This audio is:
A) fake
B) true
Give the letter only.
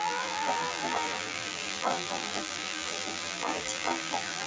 A